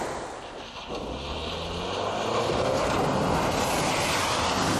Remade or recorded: recorded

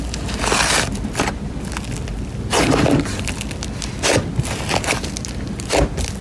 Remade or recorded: recorded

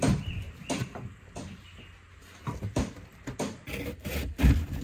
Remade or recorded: recorded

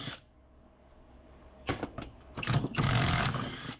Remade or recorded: remade